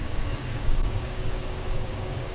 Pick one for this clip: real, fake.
fake